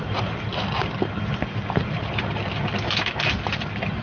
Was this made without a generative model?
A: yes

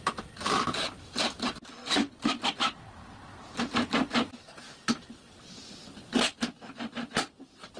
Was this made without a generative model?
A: yes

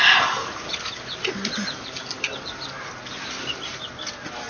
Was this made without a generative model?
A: yes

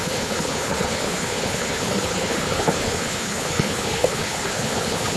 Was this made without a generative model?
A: no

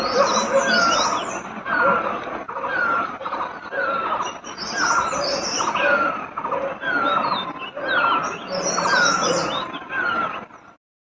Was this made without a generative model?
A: yes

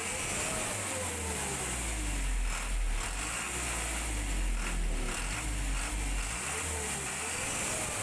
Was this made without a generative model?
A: yes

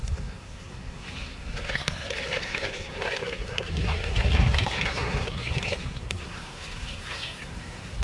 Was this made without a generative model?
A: no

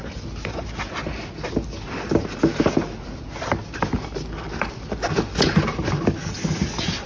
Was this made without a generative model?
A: yes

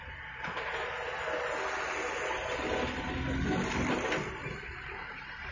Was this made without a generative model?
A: yes